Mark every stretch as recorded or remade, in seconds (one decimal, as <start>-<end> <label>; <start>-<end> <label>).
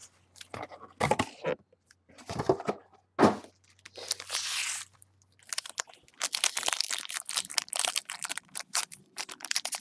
0.0-1.2 recorded; 1.2-2.8 remade; 2.8-6.7 recorded; 6.7-9.8 remade